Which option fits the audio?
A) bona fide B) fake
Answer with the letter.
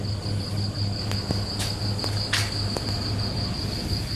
A